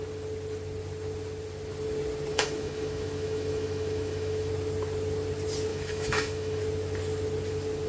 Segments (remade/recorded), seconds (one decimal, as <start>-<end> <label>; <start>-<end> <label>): 0.0-2.3 recorded; 2.3-4.5 remade; 4.5-5.7 recorded; 5.7-6.6 remade; 6.6-7.9 recorded